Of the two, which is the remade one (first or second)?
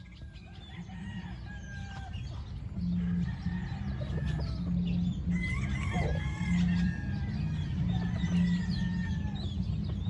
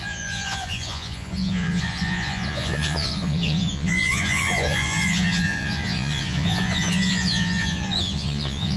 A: second